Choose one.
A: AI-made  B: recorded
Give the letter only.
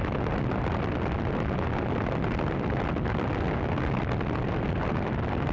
B